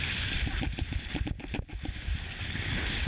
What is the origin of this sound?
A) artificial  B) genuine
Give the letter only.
B